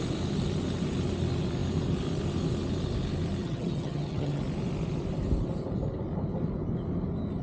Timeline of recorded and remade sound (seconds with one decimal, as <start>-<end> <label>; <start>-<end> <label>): 0.0-3.4 recorded; 3.4-4.4 remade; 4.4-7.4 recorded